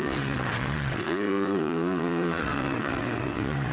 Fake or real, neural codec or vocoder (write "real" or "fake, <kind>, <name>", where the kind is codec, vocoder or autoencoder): fake, vocoder, WaveNeXt